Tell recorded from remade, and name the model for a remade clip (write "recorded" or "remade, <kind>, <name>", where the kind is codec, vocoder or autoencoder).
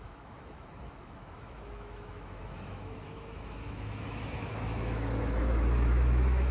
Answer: remade, autoencoder, DAC-VAE